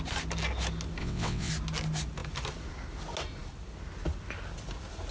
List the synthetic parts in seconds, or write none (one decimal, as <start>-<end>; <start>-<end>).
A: 1.0-1.5